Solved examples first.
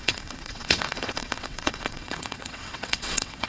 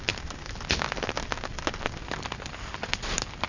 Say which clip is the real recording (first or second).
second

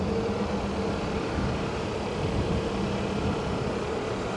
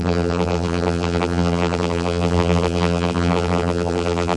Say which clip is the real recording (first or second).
first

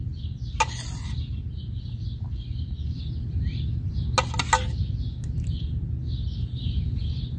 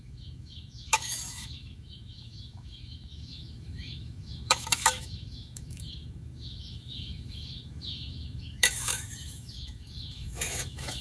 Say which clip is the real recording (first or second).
first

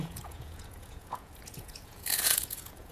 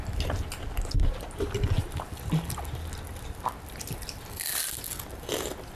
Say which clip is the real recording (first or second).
second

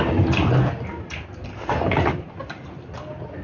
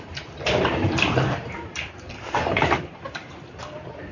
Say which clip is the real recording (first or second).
first